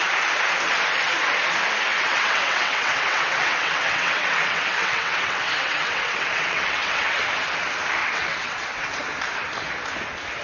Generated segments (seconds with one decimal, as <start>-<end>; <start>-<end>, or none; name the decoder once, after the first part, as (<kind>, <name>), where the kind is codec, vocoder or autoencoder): 1.9-7.2 (vocoder, WaveNeXt); 8.0-9.0